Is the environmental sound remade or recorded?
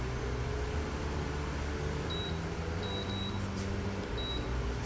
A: recorded